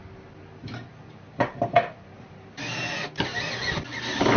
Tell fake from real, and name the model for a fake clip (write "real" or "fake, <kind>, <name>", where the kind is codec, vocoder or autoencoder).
real